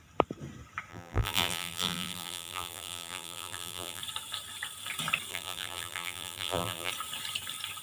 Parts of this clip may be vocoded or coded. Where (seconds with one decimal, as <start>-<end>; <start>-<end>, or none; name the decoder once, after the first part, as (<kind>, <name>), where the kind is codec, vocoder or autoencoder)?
0.9-4.0 (vocoder, BigVGAN v2); 5.3-6.9